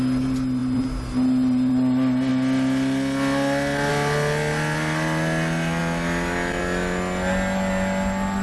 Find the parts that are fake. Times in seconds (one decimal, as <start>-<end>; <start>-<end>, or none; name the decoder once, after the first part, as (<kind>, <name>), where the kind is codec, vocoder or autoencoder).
none